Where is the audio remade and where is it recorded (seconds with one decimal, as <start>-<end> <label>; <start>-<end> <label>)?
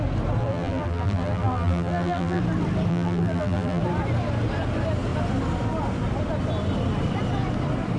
0.0-0.4 recorded; 0.4-2.4 remade; 2.4-2.9 recorded; 2.9-3.8 remade; 3.8-8.0 recorded